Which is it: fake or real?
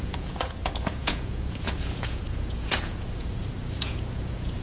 fake